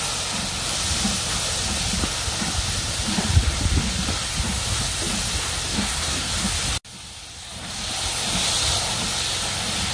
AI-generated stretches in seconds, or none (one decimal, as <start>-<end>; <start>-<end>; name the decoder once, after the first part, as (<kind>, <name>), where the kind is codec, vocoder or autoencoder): 5.7-6.3 (codec, SNAC)